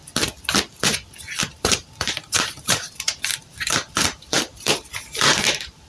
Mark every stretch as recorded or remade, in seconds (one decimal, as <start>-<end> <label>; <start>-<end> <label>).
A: 0.0-1.4 recorded; 1.4-5.9 remade